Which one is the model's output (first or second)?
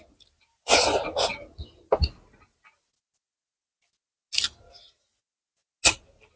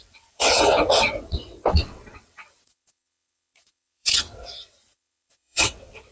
second